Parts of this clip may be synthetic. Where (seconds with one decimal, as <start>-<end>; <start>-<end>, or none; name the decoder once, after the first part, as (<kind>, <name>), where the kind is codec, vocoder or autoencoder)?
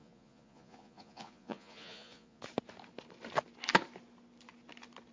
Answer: 0.0-2.4 (vocoder, Vocos)